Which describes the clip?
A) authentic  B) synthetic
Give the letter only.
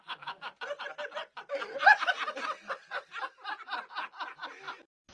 B